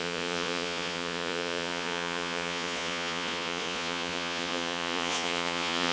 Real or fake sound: fake